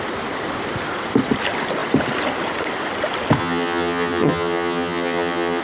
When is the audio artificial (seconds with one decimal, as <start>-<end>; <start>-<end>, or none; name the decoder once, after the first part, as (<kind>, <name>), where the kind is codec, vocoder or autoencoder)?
3.4-5.6 (vocoder, HiFi-GAN)